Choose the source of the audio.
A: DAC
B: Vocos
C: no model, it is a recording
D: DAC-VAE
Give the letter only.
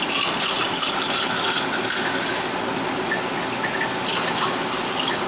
C